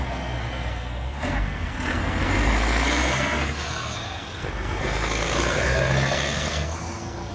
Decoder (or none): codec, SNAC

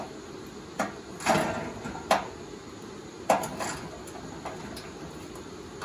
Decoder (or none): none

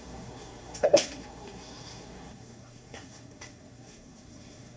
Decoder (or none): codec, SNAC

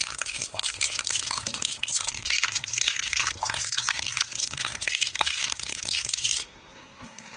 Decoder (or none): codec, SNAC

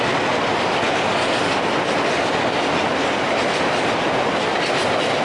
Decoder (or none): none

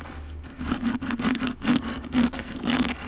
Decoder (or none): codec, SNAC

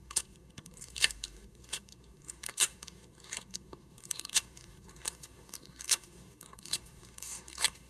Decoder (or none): codec, SNAC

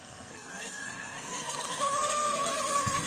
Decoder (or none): codec, SNAC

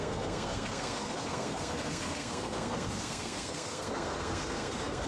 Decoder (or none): codec, SNAC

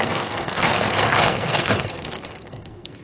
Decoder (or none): codec, SNAC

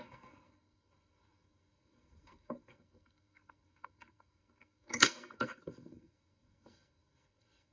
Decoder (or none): codec, SNAC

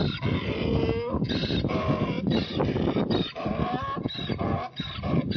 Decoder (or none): none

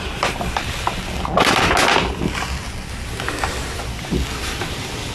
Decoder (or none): none